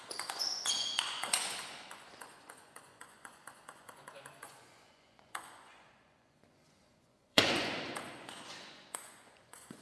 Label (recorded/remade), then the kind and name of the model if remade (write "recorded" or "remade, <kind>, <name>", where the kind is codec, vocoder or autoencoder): remade, vocoder, Vocos